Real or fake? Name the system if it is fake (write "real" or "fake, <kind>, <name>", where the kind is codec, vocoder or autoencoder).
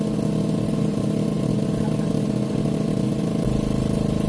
real